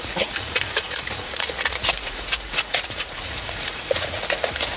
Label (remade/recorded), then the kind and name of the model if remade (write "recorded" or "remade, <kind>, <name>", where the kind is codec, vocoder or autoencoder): remade, vocoder, Vocos